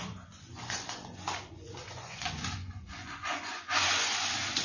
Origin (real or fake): fake